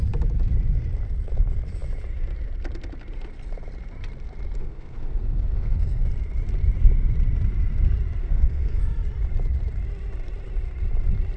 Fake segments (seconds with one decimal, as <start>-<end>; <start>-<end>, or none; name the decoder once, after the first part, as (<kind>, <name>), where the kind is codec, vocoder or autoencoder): 4.6-6.0 (codec, SNAC); 8.2-8.8